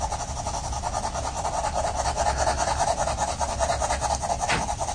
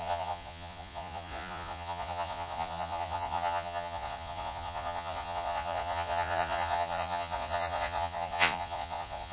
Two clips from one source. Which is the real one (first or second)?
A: first